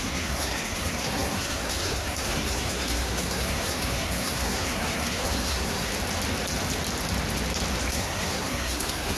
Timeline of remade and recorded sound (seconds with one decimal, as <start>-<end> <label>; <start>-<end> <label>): 0.0-5.9 remade; 5.9-7.9 recorded; 7.9-9.2 remade